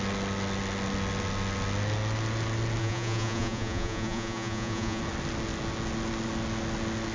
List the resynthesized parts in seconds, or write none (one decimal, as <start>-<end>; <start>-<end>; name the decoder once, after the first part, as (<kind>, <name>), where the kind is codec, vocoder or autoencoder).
2.8-5.0 (vocoder, Vocos)